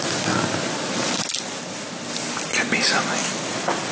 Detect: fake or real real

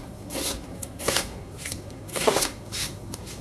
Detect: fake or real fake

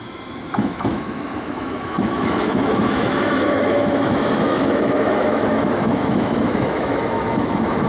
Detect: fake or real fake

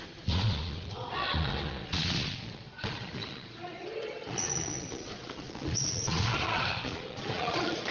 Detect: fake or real fake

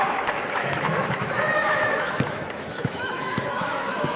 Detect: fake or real fake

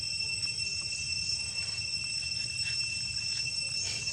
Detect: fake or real real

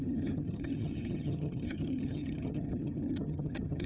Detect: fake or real fake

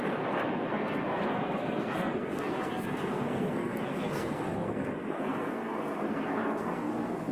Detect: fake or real fake